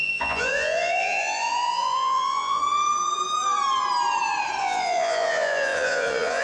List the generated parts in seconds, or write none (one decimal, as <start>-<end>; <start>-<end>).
0.0-2.6; 4.6-6.4